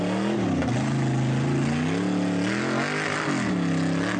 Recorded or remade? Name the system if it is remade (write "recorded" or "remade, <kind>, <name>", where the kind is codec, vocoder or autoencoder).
recorded